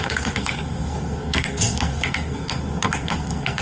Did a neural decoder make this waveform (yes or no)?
yes